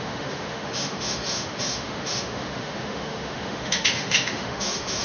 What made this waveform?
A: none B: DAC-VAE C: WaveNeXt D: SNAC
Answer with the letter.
B